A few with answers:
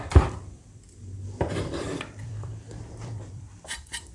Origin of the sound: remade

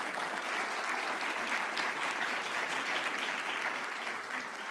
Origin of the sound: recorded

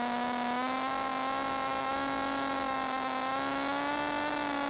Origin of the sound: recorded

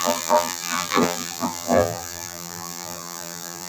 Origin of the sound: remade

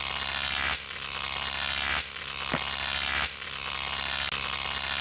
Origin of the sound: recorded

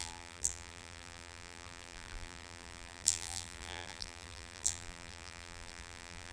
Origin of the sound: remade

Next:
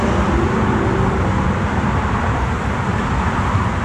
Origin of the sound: recorded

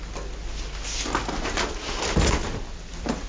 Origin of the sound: recorded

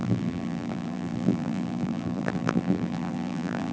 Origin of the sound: remade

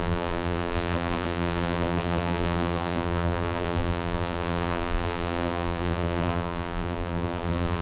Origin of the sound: remade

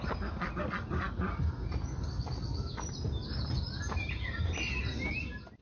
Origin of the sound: recorded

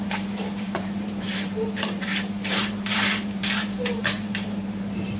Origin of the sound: remade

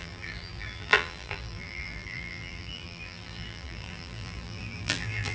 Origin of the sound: remade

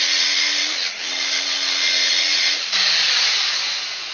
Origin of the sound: recorded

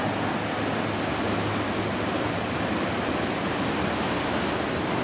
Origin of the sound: recorded